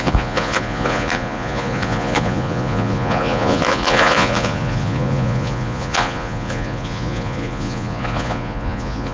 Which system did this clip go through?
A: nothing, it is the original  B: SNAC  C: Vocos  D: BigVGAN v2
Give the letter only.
C